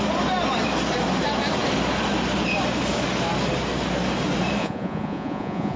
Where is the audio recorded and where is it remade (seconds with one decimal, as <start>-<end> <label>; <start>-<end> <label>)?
0.0-4.6 recorded; 4.6-5.8 remade